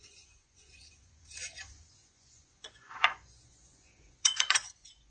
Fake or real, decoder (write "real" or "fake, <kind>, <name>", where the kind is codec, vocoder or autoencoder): fake, vocoder, Vocos